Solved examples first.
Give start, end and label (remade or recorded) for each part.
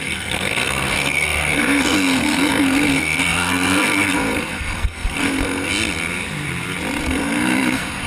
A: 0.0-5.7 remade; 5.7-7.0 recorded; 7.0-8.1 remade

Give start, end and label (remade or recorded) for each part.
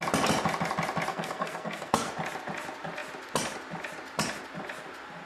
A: 0.0-1.1 recorded; 1.1-2.1 remade; 2.1-5.3 recorded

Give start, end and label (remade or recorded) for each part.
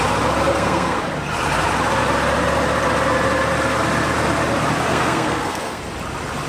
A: 0.0-0.5 recorded; 0.5-1.0 remade; 1.0-4.9 recorded; 4.9-5.8 remade; 5.8-6.5 recorded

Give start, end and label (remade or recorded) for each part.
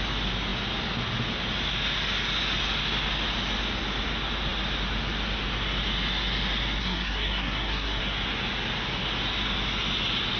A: 0.0-6.8 recorded; 6.8-8.0 remade; 8.0-10.4 recorded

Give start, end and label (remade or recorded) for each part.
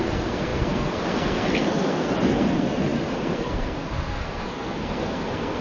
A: 0.0-5.6 remade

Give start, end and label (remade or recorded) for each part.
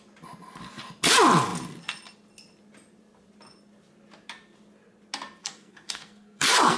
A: 0.0-5.4 recorded; 5.4-6.8 remade